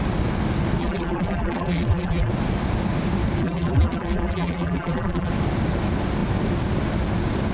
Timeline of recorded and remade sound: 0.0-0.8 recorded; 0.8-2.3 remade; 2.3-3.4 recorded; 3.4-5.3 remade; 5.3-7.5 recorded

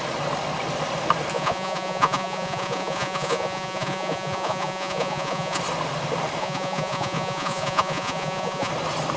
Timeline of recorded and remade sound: 0.0-1.3 recorded; 1.3-5.6 remade; 5.6-6.4 recorded; 6.4-8.7 remade; 8.7-9.2 recorded

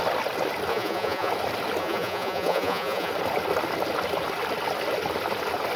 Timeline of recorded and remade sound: 0.0-0.7 recorded; 0.7-1.3 remade; 1.3-1.8 recorded; 1.8-3.1 remade; 3.1-5.8 recorded